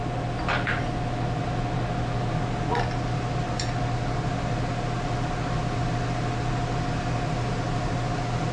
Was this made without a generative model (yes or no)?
yes